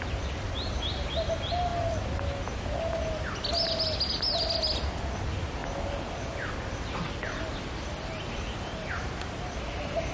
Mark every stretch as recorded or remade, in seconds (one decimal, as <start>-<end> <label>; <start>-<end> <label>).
0.0-10.1 recorded